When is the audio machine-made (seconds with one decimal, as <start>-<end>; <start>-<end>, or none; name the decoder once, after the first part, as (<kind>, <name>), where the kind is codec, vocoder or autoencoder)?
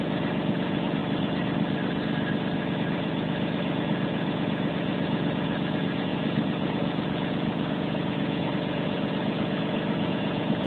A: 0.0-1.0 (vocoder, Vocos); 2.6-10.7